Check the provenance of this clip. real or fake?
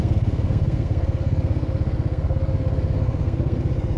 fake